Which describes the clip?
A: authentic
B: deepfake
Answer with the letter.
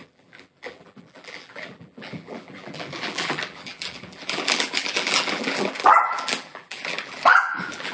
B